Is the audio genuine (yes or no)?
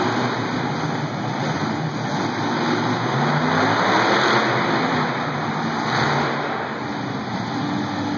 yes